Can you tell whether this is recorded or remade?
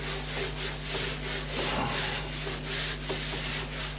recorded